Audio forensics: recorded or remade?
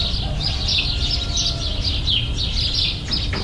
recorded